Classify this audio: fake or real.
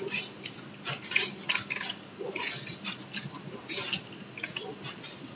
real